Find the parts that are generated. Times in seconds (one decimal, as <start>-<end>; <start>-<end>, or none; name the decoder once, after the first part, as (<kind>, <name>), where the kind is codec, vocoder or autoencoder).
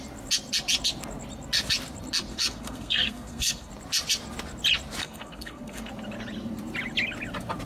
2.3-3.7 (codec, SNAC); 5.0-5.9